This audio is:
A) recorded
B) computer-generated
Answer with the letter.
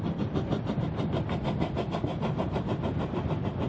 A